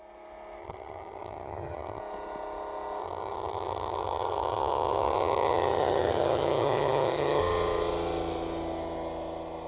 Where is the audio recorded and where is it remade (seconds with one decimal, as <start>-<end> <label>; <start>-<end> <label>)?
0.0-0.6 recorded; 0.6-2.0 remade; 2.0-3.0 recorded; 3.0-7.4 remade; 7.4-9.7 recorded